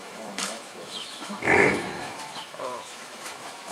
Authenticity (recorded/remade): remade